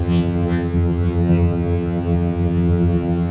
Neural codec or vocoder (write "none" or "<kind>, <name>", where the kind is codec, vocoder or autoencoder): vocoder, HiFi-GAN